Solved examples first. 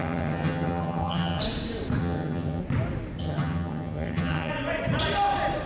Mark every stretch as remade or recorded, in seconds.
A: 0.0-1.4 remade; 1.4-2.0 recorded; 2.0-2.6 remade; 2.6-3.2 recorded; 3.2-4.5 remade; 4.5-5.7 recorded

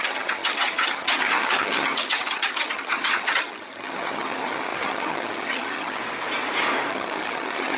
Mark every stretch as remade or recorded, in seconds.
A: 0.0-6.0 remade; 6.0-6.9 recorded; 6.9-7.8 remade

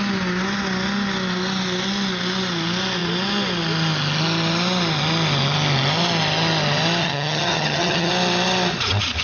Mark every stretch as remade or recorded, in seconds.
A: 0.0-7.0 recorded; 7.0-8.1 remade; 8.1-9.2 recorded

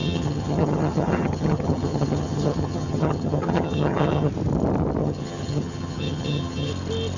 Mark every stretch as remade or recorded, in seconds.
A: 0.0-4.3 remade; 4.3-5.0 recorded; 5.0-6.7 remade; 6.7-7.2 recorded